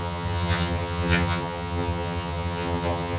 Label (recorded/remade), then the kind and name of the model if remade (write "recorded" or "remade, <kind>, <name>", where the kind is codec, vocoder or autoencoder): remade, vocoder, HiFi-GAN